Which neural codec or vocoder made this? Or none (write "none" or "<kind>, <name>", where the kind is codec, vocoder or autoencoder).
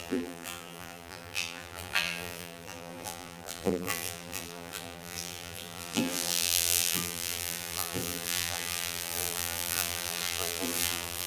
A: vocoder, BigVGAN v2